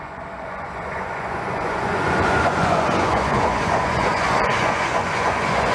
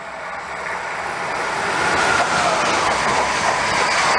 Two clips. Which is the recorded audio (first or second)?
second